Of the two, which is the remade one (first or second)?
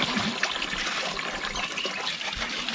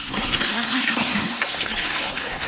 second